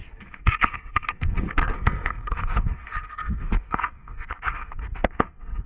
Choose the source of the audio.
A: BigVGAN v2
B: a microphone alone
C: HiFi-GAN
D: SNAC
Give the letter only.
D